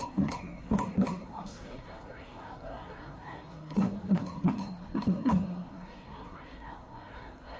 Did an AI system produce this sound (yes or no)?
yes